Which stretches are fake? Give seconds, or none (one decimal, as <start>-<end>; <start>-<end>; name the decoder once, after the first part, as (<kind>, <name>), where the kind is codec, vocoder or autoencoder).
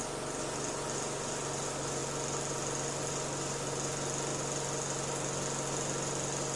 none